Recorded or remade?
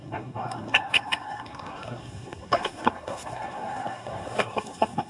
remade